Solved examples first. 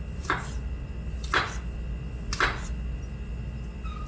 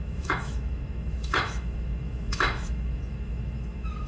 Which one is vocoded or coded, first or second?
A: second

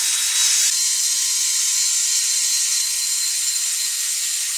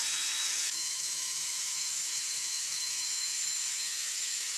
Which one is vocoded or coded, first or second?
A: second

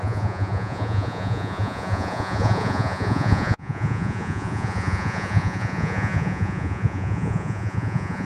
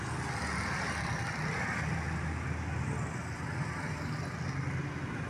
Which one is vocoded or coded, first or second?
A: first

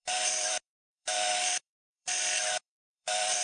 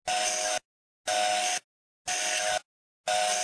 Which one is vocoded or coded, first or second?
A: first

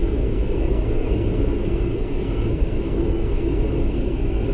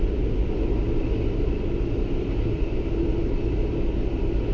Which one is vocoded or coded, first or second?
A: first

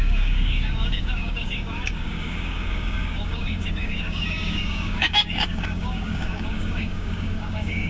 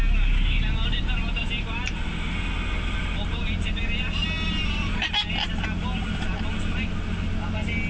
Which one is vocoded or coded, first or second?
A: first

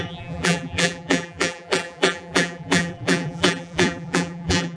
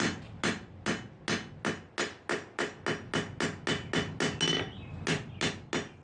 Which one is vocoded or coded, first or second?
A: first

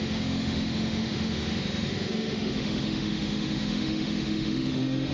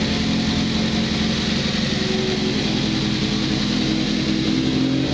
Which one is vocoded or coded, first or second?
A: first